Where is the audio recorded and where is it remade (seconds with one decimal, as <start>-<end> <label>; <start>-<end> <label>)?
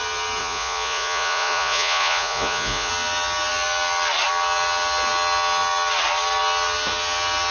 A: 0.0-0.4 recorded; 0.4-2.9 remade; 2.9-7.5 recorded